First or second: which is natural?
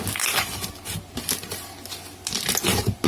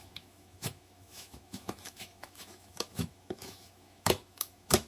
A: first